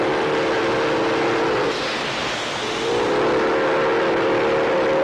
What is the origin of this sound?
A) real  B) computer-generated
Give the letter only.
A